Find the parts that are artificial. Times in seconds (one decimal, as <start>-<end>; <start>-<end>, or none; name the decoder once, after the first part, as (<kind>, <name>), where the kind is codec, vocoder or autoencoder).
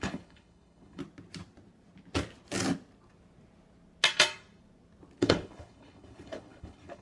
0.0-1.0 (codec, HILCodec); 5.2-7.0